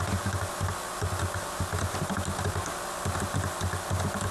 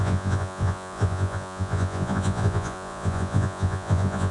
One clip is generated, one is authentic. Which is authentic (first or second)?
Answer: first